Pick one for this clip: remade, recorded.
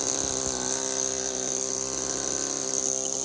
recorded